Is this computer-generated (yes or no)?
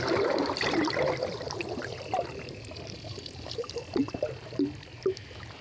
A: yes